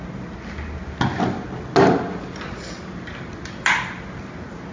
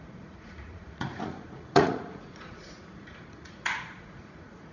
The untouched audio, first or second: first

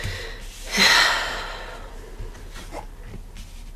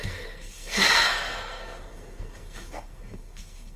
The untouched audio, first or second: first